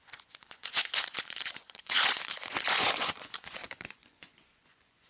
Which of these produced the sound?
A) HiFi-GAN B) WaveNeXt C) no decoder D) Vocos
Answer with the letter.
D